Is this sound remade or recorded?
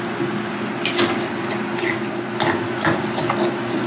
recorded